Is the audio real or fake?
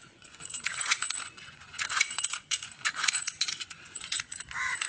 fake